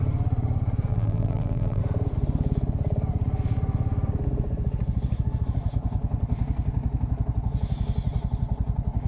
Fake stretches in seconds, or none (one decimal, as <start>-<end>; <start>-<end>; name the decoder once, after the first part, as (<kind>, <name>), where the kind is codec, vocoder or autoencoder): 0.9-1.8 (vocoder, BigVGAN v2)